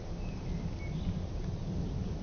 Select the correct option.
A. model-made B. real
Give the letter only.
B